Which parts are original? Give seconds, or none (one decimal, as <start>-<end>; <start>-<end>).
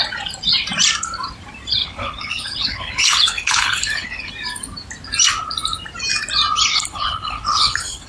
0.0-1.8; 4.3-6.7